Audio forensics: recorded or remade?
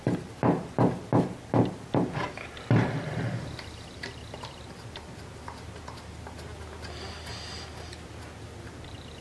recorded